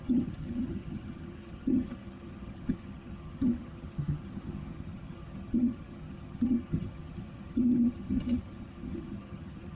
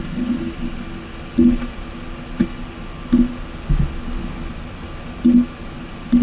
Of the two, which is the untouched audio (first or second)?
second